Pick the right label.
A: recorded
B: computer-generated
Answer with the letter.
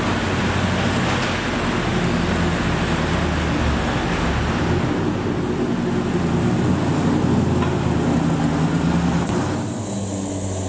A